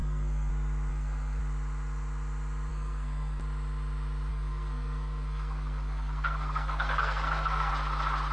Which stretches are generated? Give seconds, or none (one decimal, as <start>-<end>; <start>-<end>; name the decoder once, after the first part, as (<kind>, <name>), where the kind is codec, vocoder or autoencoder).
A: 0.0-0.5 (codec, SNAC); 0.9-1.4; 2.7-3.4; 4.3-7.7